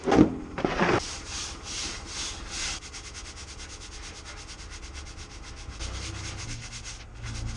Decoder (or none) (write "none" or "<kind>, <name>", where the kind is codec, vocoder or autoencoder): none